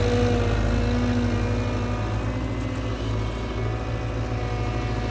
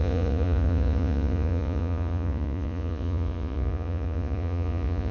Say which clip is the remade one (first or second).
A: second